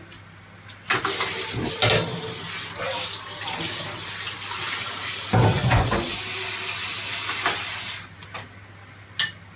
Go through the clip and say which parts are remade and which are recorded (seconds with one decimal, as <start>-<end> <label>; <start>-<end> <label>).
0.0-5.5 recorded; 5.5-6.1 remade; 6.1-9.6 recorded